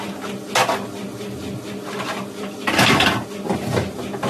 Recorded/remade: recorded